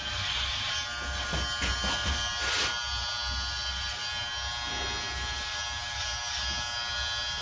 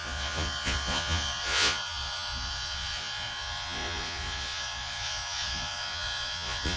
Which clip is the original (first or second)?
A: first